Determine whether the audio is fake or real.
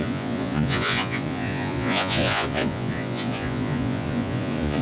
fake